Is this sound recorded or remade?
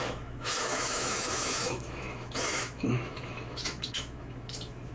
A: remade